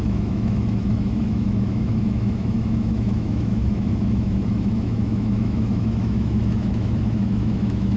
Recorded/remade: remade